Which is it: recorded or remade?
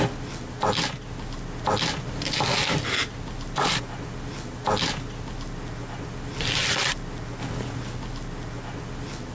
recorded